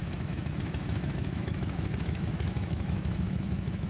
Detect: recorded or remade remade